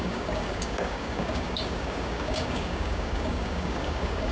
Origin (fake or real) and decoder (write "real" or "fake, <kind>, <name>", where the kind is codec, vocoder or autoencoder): fake, codec, DAC